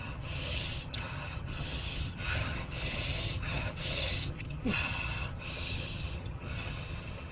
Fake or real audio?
fake